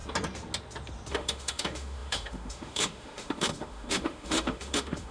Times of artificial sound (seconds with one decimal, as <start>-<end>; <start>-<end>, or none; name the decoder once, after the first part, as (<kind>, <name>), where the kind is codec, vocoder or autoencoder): 1.1-5.1 (autoencoder, DAC-VAE)